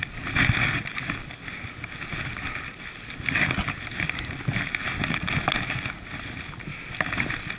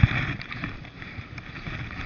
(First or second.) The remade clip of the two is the second